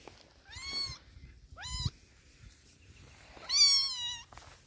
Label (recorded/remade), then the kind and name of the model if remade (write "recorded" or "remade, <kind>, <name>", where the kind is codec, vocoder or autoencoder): recorded